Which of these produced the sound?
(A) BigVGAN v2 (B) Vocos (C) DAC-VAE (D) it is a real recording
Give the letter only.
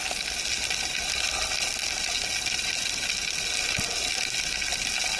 D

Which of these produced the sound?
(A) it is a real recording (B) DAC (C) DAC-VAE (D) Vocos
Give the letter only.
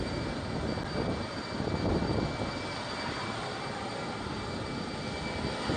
A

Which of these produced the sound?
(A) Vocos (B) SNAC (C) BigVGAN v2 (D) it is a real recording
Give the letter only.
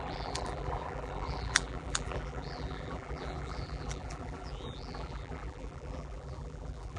C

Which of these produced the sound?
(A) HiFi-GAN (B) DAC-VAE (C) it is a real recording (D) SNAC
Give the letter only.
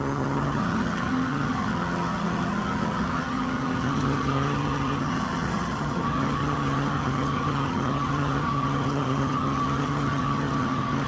A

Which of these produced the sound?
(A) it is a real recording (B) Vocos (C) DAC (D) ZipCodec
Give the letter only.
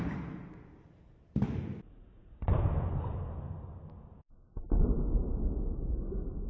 A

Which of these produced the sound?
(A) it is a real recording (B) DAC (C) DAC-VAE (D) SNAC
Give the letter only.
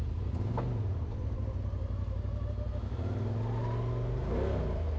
A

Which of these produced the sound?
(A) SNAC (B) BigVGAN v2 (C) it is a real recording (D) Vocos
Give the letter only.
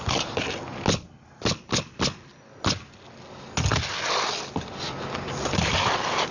C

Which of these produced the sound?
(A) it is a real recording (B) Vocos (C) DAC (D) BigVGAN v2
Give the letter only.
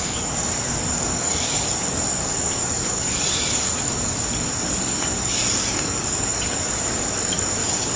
C